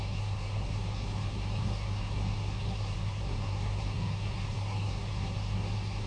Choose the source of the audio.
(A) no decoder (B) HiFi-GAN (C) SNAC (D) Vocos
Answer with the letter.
C